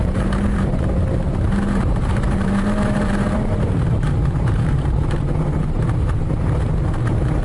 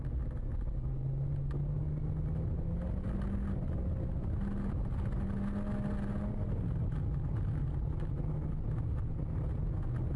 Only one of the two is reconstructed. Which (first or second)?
first